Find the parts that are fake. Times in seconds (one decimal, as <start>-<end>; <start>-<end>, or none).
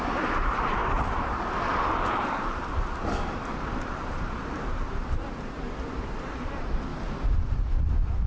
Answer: 0.0-6.9; 7.7-8.3